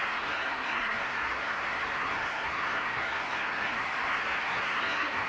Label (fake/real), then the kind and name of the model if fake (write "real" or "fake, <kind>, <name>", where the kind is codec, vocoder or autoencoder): fake, codec, SNAC